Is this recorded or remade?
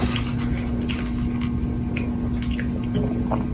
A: recorded